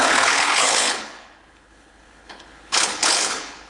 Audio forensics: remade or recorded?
remade